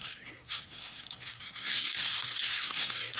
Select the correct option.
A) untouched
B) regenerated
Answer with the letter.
B